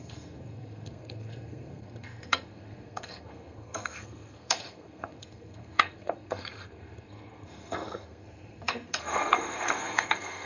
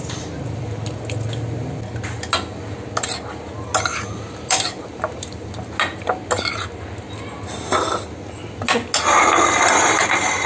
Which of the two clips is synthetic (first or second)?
first